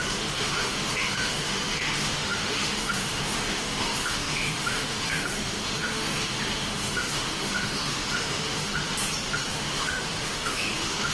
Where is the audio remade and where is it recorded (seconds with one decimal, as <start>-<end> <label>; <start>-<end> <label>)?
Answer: 0.0-8.7 remade; 8.7-9.5 recorded; 9.5-11.1 remade